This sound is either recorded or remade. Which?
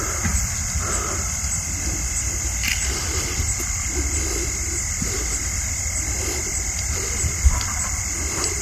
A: recorded